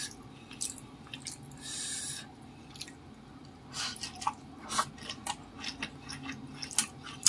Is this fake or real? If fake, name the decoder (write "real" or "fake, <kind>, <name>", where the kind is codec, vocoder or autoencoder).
real